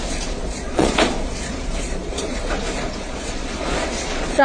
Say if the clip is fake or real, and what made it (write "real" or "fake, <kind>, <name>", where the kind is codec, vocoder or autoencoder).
fake, vocoder, Vocos